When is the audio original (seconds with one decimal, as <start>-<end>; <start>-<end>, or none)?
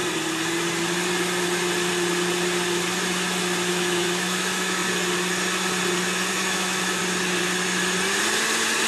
0.0-3.7; 4.8-6.3; 7.0-8.9